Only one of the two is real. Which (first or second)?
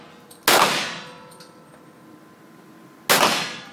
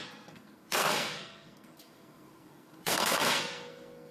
first